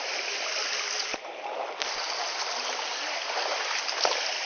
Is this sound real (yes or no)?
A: yes